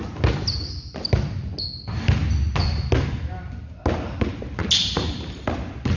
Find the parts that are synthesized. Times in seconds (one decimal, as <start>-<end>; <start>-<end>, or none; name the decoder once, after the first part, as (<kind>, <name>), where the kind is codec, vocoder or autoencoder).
none